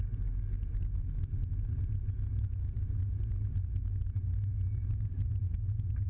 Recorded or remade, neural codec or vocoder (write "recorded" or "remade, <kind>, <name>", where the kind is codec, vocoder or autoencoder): recorded